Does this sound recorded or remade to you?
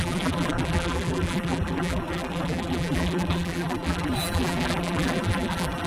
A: remade